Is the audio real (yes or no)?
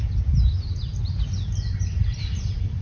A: yes